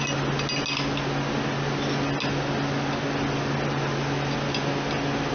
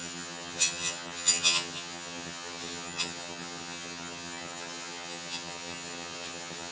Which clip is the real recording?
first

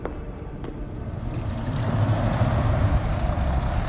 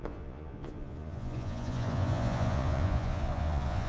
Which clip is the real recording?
first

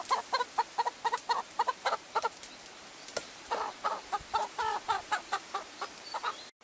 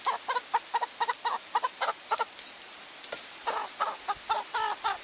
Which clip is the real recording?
second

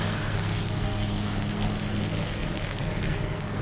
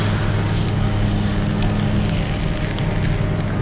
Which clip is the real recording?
second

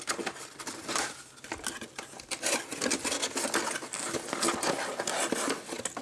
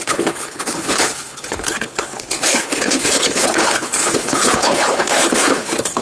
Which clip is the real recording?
first